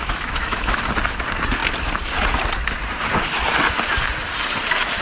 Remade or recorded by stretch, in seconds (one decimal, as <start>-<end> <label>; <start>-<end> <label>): 0.0-0.8 remade; 0.8-5.0 recorded